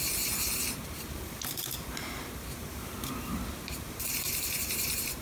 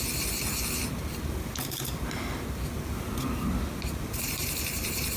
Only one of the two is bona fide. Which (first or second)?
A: second